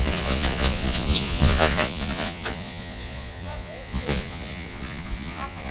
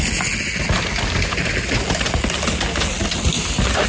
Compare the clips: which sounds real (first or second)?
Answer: second